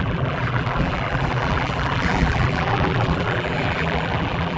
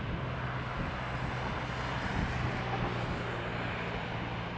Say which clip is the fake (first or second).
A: first